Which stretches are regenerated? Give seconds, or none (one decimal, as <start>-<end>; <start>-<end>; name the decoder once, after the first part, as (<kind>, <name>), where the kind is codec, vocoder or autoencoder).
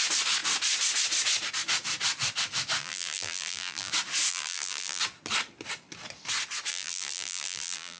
2.8-3.9 (vocoder, BigVGAN v2); 4.3-5.0; 6.7-8.0